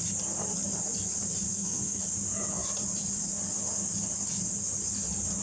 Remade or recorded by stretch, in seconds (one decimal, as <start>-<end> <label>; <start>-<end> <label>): 0.0-1.5 recorded; 1.5-2.0 remade; 2.0-5.4 recorded